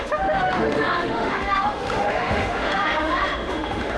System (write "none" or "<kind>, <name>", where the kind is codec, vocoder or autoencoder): autoencoder, DAC-VAE